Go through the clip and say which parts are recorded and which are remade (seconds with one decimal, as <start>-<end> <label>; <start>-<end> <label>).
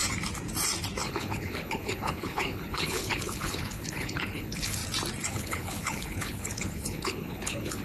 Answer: 0.0-1.0 recorded; 1.0-4.8 remade; 4.8-5.3 recorded; 5.3-7.8 remade